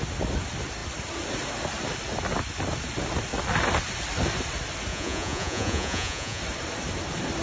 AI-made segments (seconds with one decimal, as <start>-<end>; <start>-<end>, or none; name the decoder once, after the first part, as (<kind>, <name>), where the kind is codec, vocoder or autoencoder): 4.9-6.4 (vocoder, Vocos)